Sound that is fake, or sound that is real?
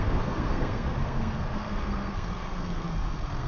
fake